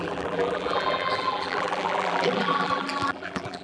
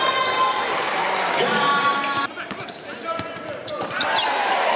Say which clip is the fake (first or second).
first